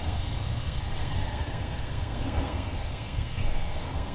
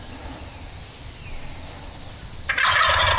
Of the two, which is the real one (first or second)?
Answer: second